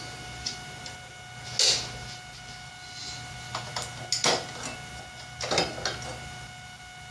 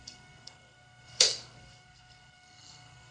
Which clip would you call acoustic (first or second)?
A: first